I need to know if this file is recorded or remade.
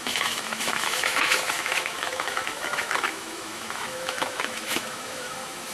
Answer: remade